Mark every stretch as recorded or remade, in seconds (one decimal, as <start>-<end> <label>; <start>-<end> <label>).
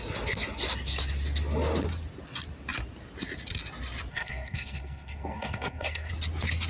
0.0-4.1 recorded; 4.1-6.1 remade; 6.1-6.7 recorded